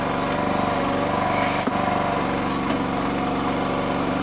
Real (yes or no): yes